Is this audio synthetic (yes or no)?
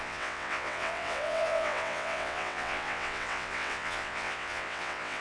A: yes